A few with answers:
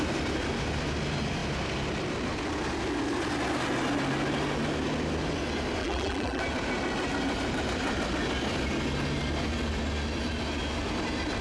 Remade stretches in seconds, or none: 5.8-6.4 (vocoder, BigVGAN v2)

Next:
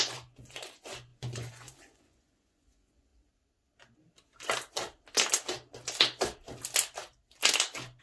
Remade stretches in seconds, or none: 0.0-3.1 (vocoder, Vocos)

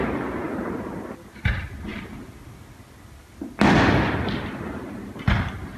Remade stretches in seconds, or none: none

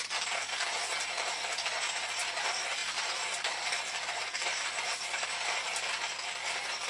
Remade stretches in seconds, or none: 2.8-5.9 (vocoder, BigVGAN v2)